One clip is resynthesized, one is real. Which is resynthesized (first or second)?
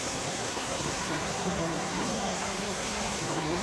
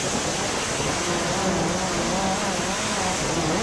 first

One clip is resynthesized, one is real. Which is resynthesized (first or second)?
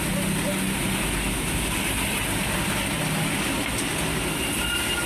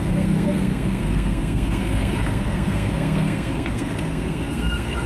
second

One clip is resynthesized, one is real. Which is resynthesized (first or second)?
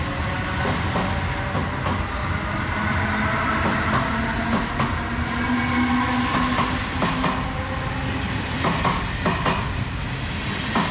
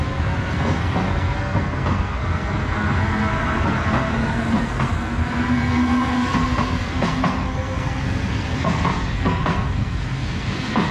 second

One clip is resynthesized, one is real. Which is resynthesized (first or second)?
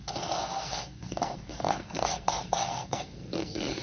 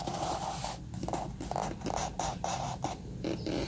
first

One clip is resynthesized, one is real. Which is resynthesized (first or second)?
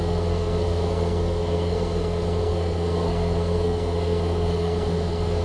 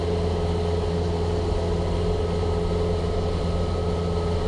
first